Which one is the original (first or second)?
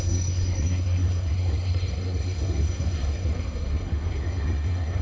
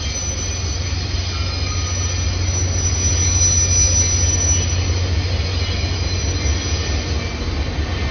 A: second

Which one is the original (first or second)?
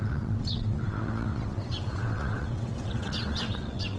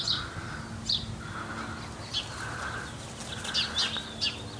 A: second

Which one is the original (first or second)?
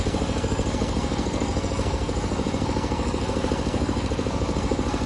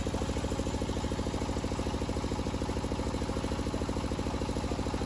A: second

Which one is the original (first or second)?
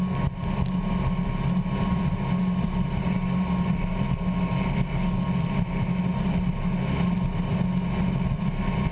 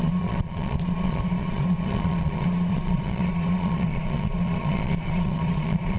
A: first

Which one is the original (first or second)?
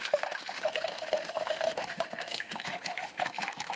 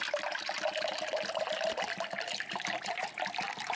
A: second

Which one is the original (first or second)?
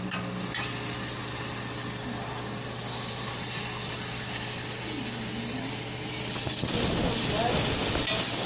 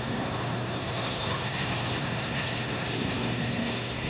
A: first